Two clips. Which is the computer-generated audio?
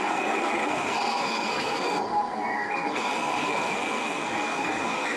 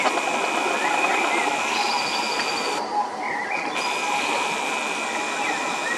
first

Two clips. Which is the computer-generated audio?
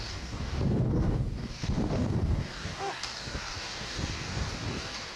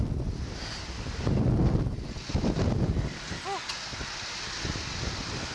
first